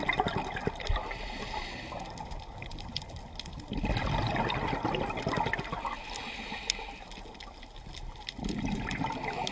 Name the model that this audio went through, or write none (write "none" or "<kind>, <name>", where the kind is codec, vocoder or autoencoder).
none